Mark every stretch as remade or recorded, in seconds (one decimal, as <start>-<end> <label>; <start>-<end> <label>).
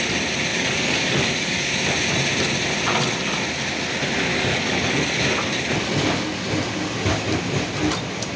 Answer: 0.0-0.5 recorded; 0.5-1.7 remade; 1.7-4.3 recorded; 4.3-5.2 remade; 5.2-8.4 recorded